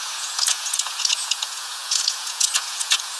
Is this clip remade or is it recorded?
remade